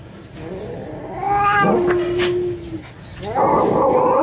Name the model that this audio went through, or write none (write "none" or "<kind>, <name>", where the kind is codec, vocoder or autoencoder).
none